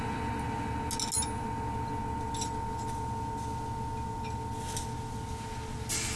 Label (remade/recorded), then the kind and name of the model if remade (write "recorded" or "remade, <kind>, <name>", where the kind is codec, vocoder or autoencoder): recorded